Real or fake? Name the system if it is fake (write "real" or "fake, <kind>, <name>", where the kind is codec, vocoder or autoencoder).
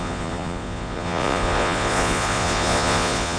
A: fake, vocoder, Vocos